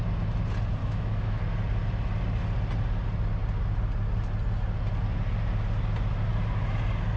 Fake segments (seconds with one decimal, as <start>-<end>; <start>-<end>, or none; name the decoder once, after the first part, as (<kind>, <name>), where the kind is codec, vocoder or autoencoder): 0.8-1.4 (autoencoder, DAC-VAE)